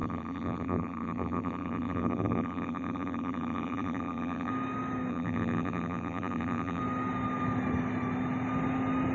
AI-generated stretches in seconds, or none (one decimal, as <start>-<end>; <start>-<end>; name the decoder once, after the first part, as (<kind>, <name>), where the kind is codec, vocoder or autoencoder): 0.0-4.5 (vocoder, BigVGAN v2); 5.1-6.8